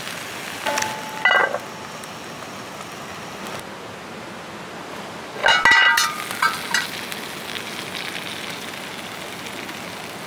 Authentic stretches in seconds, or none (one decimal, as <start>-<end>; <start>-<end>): 0.0-10.3